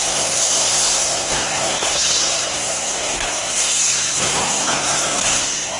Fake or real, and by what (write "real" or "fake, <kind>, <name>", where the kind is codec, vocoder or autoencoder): fake, codec, SNAC